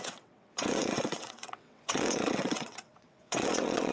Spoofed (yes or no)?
yes